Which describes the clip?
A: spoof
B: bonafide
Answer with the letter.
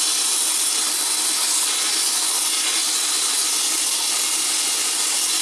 B